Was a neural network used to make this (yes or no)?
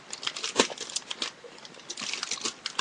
no